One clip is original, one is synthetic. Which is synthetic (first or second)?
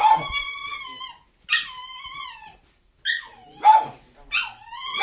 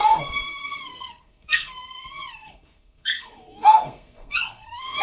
second